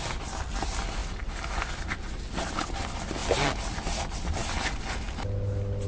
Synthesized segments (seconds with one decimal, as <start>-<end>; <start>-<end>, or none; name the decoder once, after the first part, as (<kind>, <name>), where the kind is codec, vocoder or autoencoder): none